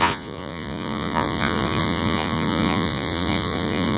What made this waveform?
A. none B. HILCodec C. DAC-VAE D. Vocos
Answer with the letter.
D